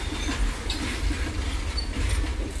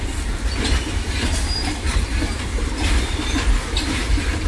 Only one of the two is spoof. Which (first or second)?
second